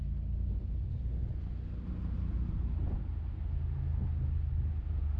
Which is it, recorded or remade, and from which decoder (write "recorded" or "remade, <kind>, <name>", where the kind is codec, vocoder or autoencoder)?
recorded